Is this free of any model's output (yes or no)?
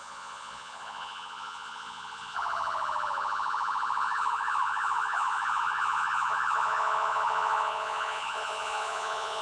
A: no